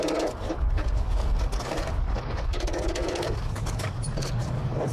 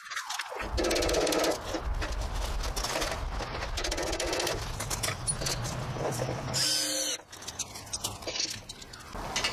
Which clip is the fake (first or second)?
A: first